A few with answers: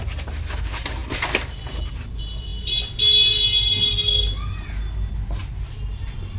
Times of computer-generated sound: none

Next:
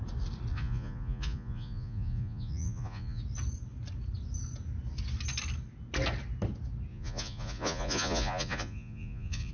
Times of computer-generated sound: 0.5-3.2 (vocoder, Vocos); 6.9-9.5

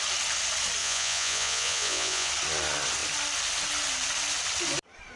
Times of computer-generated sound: 0.8-2.3 (vocoder, Vocos)

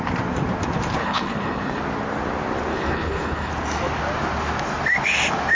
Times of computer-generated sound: 1.0-1.8 (codec, HILCodec); 2.7-3.5